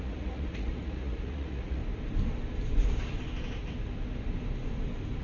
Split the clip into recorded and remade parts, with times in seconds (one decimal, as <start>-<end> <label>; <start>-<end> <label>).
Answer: 0.0-1.8 remade; 1.8-5.2 recorded

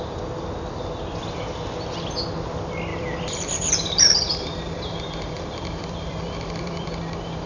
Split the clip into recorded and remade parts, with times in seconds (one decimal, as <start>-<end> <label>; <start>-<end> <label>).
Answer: 0.0-2.9 recorded; 2.9-6.8 remade; 6.8-7.5 recorded

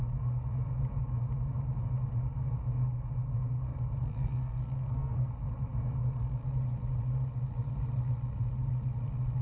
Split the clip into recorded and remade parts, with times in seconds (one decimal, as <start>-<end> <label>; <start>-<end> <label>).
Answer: 0.0-4.0 recorded; 4.0-5.3 remade; 5.3-9.4 recorded